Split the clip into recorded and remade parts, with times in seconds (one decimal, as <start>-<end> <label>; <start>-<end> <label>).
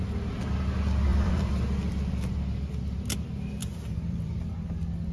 0.0-1.1 recorded; 1.1-2.3 remade; 2.3-3.6 recorded; 3.6-4.4 remade; 4.4-5.1 recorded